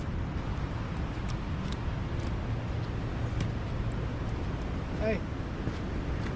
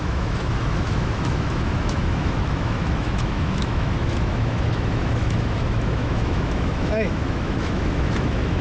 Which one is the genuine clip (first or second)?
first